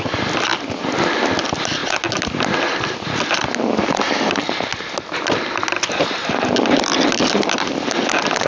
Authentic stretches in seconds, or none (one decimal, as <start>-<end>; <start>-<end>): 0.0-8.5